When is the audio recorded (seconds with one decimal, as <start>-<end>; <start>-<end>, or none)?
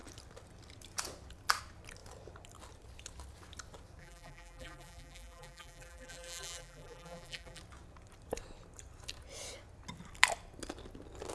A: 0.0-4.0; 7.6-11.3